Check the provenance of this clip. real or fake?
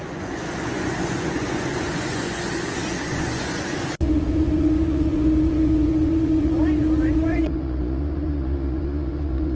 fake